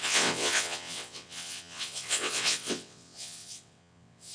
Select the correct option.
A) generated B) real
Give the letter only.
A